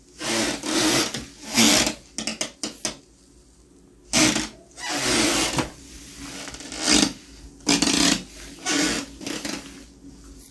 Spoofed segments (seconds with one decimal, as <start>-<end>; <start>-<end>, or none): none